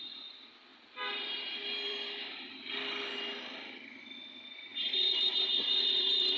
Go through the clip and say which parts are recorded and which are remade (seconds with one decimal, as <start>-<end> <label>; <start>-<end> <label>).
0.0-0.7 recorded; 0.7-3.2 remade; 3.2-4.7 recorded; 4.7-6.4 remade